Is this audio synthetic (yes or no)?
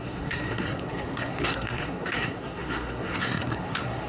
yes